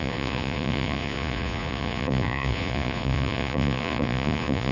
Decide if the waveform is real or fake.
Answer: fake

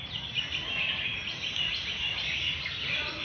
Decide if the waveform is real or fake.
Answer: real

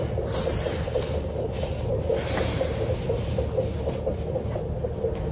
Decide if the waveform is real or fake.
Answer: real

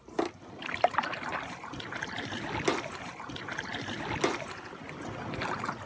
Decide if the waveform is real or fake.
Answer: real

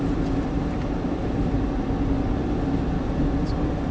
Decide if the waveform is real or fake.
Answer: real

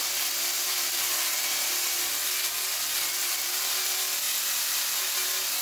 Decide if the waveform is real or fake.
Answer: real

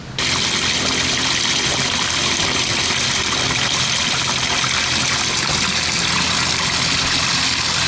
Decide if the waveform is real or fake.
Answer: real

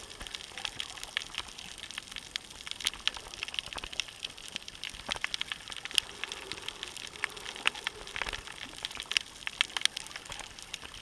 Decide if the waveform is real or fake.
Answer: real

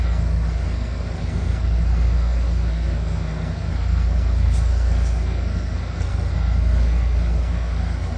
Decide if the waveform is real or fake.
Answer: fake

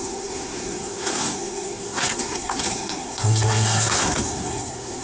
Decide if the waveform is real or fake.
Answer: fake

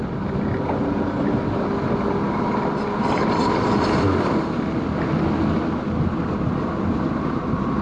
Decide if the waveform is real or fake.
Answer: real